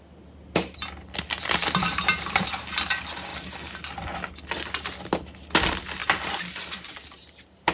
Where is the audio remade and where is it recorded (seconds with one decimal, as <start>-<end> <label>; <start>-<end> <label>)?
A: 0.0-1.6 recorded; 1.6-2.4 remade; 2.4-6.0 recorded; 6.0-7.7 remade